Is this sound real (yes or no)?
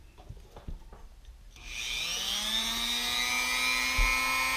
yes